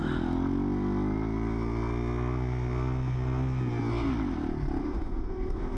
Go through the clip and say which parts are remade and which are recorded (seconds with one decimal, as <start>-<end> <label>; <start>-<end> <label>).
0.0-4.8 recorded; 4.8-5.8 remade